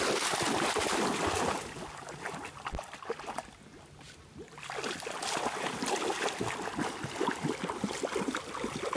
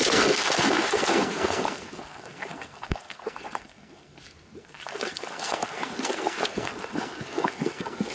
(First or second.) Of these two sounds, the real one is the first